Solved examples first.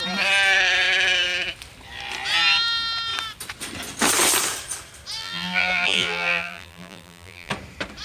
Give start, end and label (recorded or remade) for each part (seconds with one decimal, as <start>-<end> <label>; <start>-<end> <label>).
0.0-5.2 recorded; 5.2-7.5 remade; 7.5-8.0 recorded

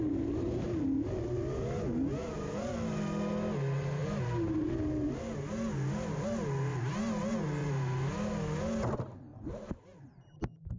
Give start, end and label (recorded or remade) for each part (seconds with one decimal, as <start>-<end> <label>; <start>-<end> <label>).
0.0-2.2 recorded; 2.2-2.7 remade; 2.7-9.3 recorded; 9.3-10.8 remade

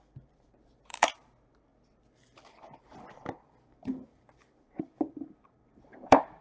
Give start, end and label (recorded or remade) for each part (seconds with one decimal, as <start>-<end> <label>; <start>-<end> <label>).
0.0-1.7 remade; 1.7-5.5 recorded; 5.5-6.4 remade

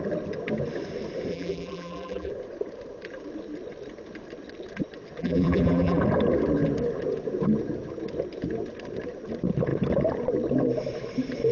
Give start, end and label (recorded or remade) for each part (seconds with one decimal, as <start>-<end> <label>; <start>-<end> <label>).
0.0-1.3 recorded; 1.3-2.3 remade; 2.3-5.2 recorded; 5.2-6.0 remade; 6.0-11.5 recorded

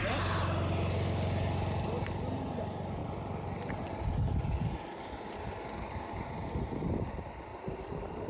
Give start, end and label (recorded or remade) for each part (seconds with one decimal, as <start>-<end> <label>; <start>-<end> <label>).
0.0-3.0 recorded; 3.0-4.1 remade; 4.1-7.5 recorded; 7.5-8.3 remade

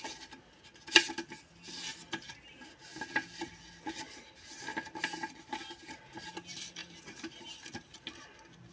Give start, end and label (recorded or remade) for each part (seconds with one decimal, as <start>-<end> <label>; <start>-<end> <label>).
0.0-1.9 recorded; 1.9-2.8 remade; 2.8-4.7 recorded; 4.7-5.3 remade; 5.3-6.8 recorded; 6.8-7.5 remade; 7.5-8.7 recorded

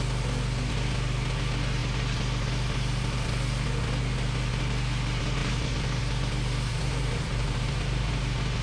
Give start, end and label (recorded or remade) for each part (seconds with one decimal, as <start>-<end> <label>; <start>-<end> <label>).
0.0-5.4 recorded; 5.4-6.0 remade; 6.0-6.7 recorded; 6.7-8.2 remade; 8.2-8.6 recorded

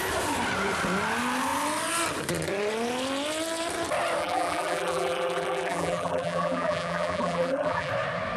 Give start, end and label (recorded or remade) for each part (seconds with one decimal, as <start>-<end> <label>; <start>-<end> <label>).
0.0-4.2 recorded; 4.2-7.9 remade; 7.9-8.4 recorded